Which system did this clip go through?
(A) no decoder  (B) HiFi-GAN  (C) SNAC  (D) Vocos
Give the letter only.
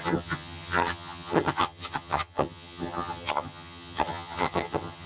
B